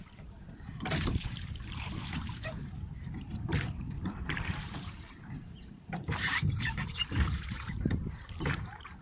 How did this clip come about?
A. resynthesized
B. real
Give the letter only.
A